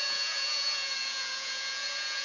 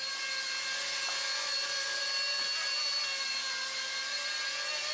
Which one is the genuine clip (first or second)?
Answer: second